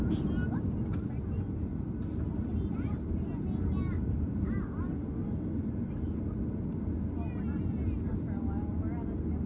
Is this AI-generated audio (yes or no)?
no